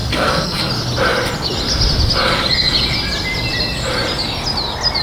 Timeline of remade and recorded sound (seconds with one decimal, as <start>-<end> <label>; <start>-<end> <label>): 0.0-0.7 remade; 0.7-5.0 recorded